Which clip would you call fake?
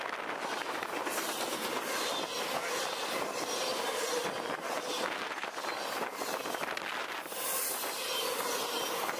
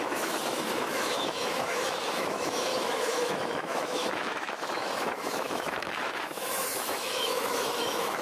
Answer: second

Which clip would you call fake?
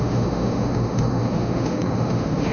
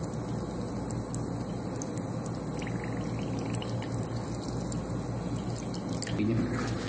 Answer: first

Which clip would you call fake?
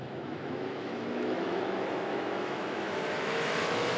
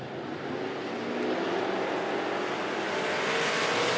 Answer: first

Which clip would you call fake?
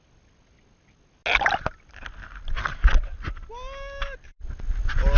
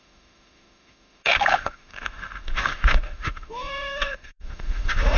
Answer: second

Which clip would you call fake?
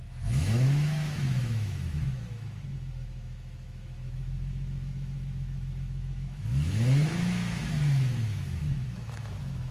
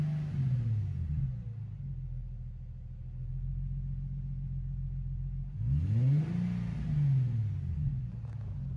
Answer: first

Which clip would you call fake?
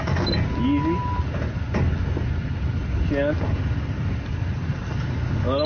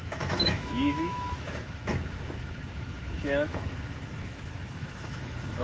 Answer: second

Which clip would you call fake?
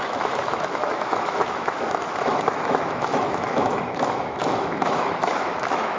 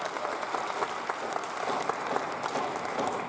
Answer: first